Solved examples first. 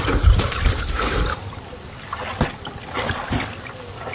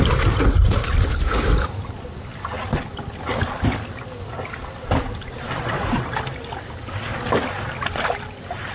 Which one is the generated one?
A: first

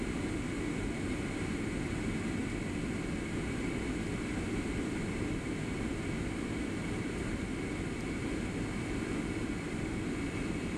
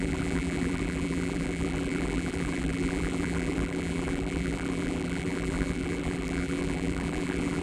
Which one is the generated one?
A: second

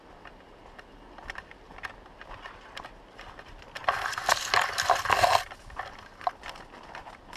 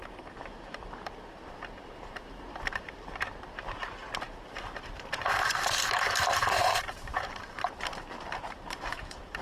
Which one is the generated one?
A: second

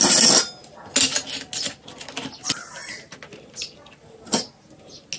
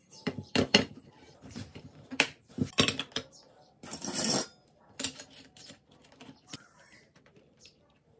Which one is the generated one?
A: second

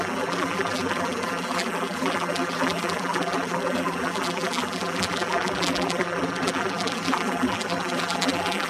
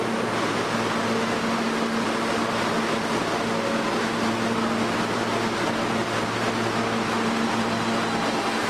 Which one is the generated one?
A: first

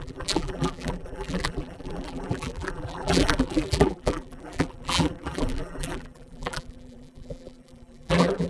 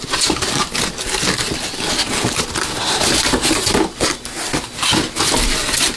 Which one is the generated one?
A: first